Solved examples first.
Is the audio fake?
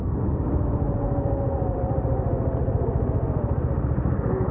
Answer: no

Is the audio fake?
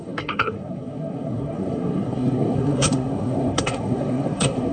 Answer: yes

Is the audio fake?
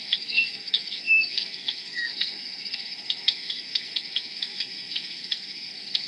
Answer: yes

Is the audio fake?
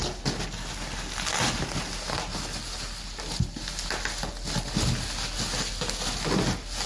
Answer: no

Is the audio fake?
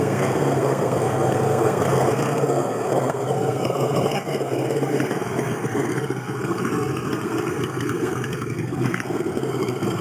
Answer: yes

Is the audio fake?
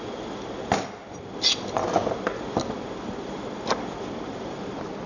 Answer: no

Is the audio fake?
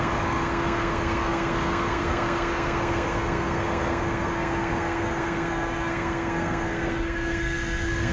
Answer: yes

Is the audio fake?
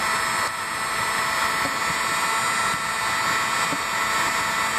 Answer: no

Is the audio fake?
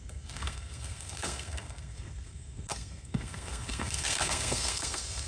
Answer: yes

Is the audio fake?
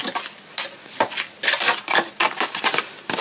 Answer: no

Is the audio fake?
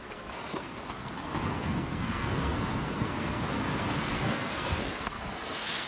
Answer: yes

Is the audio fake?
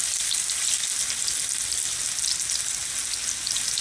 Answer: no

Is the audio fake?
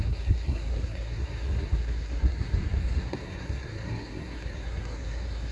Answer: yes